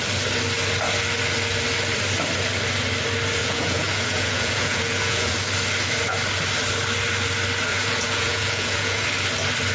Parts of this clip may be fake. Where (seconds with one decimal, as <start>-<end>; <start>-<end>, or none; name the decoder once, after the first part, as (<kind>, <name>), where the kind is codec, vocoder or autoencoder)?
3.4-5.3 (vocoder, Vocos); 7.7-9.0